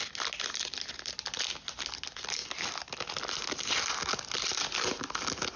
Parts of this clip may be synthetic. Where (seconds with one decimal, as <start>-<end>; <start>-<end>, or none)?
none